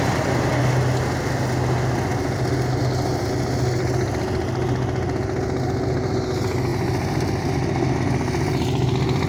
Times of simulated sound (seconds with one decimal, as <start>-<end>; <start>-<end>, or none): none

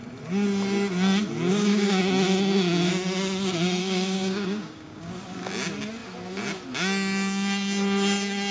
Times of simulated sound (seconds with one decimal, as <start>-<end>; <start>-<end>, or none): 1.5-2.0; 3.8-5.1

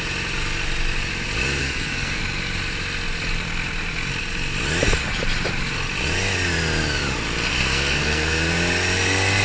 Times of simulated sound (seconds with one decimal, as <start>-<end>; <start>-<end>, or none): 1.6-2.2; 7.5-8.4

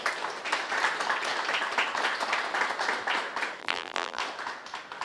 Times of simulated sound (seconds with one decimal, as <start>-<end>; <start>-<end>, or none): 3.6-4.2

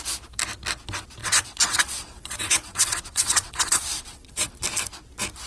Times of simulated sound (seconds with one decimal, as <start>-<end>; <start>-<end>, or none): 1.2-4.5